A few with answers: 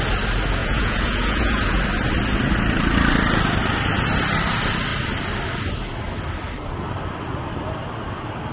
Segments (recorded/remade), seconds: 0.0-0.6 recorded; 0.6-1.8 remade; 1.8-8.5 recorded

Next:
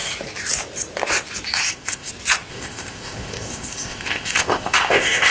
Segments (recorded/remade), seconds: 0.0-1.6 recorded; 1.6-2.1 remade; 2.1-2.5 recorded; 2.5-5.3 remade

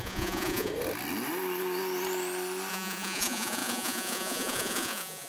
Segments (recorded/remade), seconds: 0.0-0.7 remade; 0.7-2.7 recorded; 2.7-5.3 remade

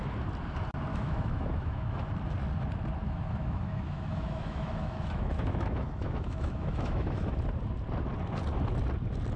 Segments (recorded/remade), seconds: 0.0-0.9 recorded; 0.9-2.1 remade; 2.1-3.0 recorded; 3.0-7.3 remade; 7.3-9.4 recorded

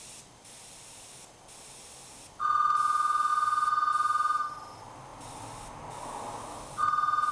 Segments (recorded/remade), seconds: 0.0-7.3 recorded

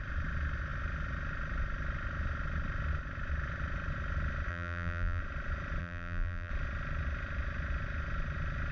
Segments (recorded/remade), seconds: 0.0-4.5 recorded; 4.5-5.2 remade; 5.2-5.8 recorded; 5.8-6.5 remade; 6.5-8.7 recorded

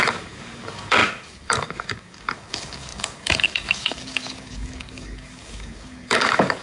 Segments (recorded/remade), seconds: 0.0-6.6 remade

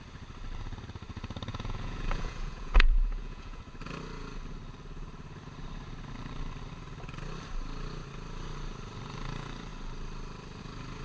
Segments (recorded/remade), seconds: 0.0-1.5 recorded; 1.5-3.6 remade; 3.6-11.0 recorded